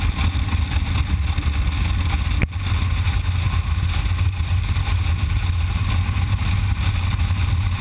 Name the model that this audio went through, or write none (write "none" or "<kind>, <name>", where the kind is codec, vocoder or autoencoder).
none